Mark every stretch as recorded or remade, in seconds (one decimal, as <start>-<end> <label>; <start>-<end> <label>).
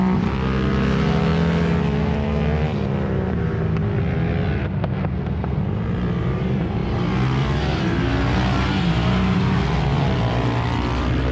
0.0-4.6 recorded; 4.6-5.6 remade; 5.6-11.3 recorded